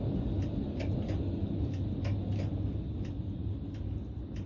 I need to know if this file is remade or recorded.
recorded